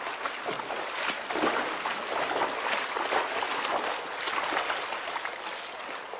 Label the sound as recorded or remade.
recorded